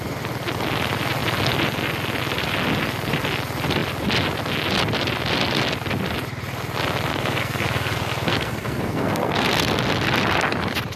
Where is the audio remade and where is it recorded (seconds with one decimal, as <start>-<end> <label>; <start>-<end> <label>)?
0.0-7.1 recorded; 7.1-9.5 remade; 9.5-11.0 recorded